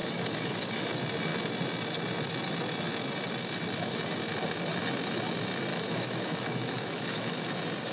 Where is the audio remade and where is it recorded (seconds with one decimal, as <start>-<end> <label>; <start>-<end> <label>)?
0.0-0.9 remade; 0.9-5.7 recorded; 5.7-7.5 remade; 7.5-7.9 recorded